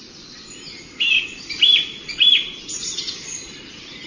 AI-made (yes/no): no